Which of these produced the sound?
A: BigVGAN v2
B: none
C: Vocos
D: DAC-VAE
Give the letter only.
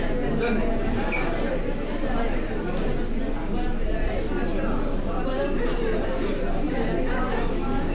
B